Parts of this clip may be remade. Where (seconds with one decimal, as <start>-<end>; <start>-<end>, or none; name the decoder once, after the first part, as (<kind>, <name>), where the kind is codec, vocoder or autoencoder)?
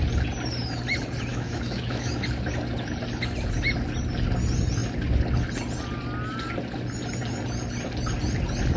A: 1.3-2.2 (autoencoder, DAC-VAE)